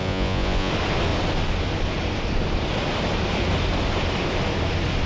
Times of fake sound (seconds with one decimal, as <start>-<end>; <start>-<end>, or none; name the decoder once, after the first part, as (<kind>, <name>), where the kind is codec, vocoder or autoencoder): 0.0-0.7 (vocoder, Vocos)